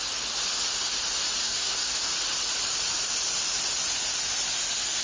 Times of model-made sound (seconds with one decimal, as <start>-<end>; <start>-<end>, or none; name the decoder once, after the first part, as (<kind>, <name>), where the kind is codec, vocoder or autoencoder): 1.4-2.0 (codec, SNAC)